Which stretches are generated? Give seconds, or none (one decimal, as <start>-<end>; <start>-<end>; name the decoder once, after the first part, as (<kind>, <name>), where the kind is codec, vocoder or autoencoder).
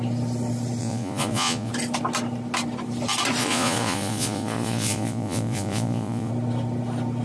0.8-1.7 (vocoder, Vocos); 3.4-6.3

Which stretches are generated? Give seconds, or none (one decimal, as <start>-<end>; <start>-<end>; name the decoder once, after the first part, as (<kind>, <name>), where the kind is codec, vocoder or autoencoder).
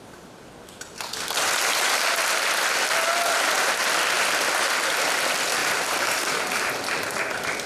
5.6-6.7 (vocoder, BigVGAN v2)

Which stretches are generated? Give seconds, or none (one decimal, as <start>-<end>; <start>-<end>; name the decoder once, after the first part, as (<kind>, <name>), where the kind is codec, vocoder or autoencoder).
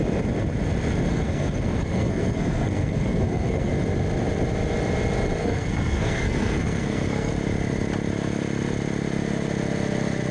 1.1-3.7 (codec, SNAC); 5.4-7.3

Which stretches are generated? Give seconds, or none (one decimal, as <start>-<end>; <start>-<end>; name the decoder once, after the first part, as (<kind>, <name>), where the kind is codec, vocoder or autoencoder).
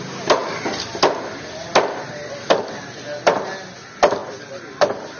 none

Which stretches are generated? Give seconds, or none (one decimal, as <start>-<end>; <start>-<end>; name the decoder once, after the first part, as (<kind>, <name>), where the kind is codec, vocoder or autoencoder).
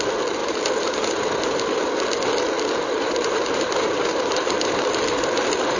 0.4-1.1 (vocoder, BigVGAN v2); 2.8-5.8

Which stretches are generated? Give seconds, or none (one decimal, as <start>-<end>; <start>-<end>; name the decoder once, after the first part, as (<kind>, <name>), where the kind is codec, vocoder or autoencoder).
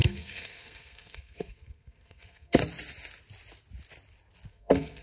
0.0-2.6 (codec, SNAC); 4.5-5.0